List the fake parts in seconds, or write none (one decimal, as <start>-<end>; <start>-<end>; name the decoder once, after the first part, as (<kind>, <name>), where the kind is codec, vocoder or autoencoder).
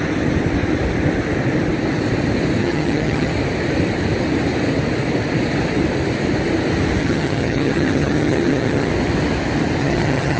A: 2.6-3.3 (vocoder, HiFi-GAN); 7.0-8.9; 9.8-10.4